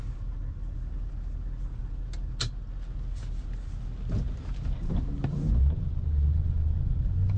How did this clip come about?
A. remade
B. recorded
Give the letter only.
B